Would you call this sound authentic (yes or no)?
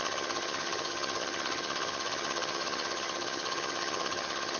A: no